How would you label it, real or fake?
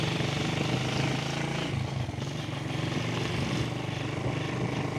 real